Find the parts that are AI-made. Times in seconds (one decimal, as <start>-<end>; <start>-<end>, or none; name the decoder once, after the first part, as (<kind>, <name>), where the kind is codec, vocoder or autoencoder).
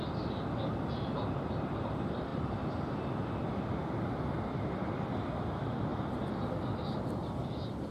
none